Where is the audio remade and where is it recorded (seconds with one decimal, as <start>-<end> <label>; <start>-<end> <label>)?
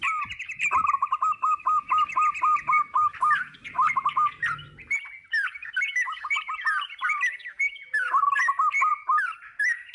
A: 0.0-5.6 recorded; 5.6-8.4 remade; 8.4-8.9 recorded; 8.9-9.9 remade